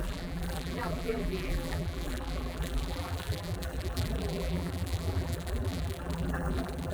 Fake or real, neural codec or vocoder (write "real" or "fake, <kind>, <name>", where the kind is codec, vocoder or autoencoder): fake, vocoder, BigVGAN v2